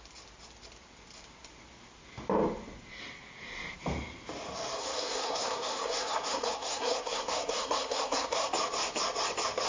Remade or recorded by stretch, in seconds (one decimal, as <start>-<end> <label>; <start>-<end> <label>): 0.0-4.8 recorded; 4.8-8.5 remade; 8.5-9.7 recorded